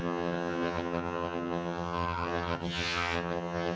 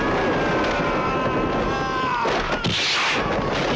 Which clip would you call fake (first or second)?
first